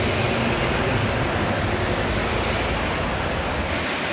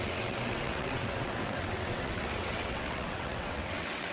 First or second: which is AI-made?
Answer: second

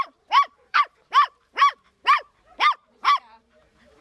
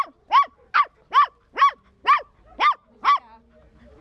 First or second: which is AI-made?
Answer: first